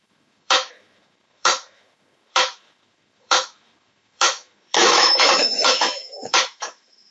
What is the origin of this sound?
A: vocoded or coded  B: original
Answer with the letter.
A